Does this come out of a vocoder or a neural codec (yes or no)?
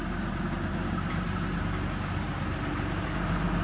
no